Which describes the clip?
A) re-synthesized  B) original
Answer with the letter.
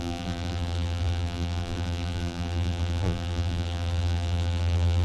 A